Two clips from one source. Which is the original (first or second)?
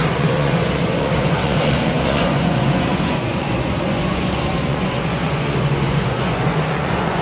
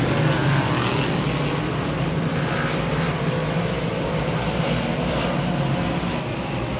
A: second